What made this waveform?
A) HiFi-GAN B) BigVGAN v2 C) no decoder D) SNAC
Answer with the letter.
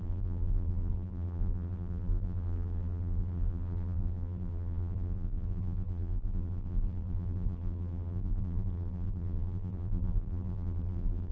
B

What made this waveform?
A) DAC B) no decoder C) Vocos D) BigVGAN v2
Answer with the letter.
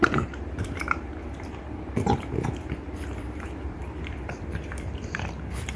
D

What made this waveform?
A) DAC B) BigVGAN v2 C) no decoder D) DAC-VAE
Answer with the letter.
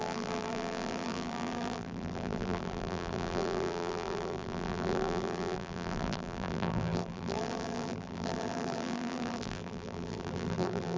B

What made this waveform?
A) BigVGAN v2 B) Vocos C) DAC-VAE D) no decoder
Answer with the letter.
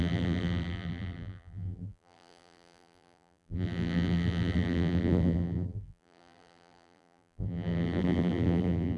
A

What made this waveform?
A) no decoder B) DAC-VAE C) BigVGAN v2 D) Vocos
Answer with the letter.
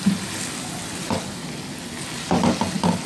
A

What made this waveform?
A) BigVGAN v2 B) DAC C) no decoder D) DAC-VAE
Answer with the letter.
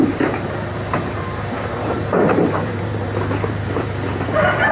A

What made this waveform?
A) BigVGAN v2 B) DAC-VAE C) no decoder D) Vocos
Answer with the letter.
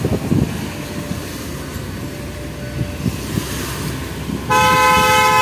C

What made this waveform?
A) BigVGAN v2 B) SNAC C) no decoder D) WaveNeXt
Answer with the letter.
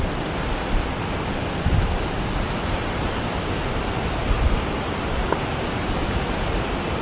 C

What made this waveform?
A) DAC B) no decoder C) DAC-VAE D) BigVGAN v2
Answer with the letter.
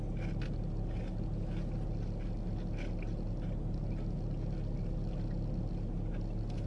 B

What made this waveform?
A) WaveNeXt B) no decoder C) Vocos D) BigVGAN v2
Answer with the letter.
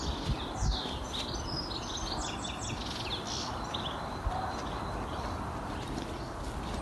B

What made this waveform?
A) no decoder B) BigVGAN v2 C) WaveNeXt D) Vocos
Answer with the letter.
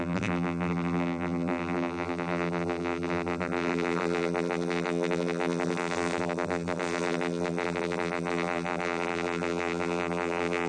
B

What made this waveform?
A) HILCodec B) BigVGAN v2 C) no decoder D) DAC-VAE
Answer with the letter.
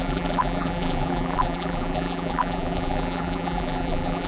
B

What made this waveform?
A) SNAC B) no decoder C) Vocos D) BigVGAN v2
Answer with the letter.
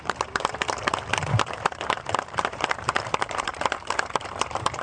D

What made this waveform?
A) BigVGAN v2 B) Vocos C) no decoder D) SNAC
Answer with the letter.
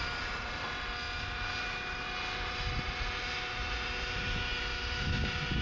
C